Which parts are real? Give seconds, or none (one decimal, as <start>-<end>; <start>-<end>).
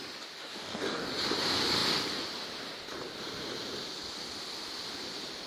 0.0-0.4; 1.1-5.5